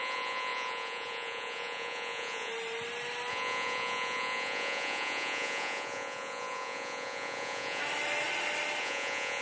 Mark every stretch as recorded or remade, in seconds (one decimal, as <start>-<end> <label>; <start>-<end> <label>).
0.0-2.5 remade; 2.5-3.3 recorded; 3.3-7.8 remade; 7.8-8.8 recorded; 8.8-9.4 remade